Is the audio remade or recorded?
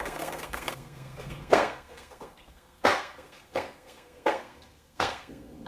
remade